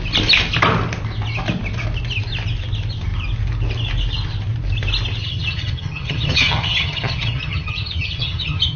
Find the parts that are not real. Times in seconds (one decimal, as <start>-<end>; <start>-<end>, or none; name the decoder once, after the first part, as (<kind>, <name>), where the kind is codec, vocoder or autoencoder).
5.2-8.8 (vocoder, HiFi-GAN)